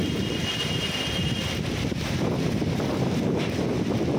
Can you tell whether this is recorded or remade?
recorded